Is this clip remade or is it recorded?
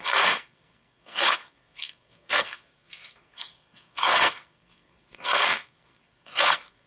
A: remade